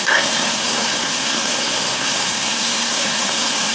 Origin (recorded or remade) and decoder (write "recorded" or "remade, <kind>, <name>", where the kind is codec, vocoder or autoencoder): remade, codec, SNAC